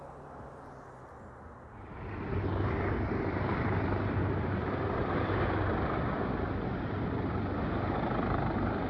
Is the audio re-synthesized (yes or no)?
no